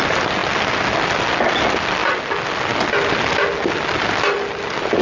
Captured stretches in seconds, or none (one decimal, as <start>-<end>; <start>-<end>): 0.0-5.0